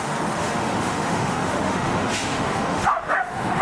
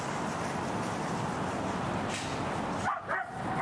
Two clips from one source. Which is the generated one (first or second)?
first